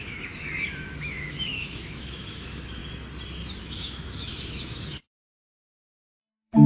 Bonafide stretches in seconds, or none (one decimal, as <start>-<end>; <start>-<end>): 2.8-3.6